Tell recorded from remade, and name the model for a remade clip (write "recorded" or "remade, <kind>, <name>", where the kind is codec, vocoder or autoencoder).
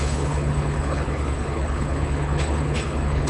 remade, codec, HILCodec